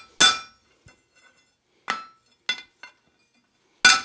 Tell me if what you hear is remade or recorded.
recorded